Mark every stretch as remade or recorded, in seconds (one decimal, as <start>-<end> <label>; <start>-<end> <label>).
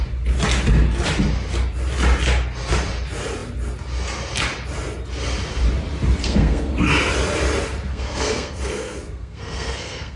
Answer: 0.0-6.2 recorded; 6.2-6.9 remade; 6.9-7.9 recorded; 7.9-10.2 remade